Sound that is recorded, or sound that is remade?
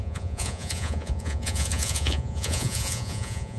remade